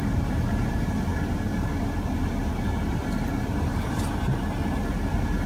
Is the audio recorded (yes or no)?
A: yes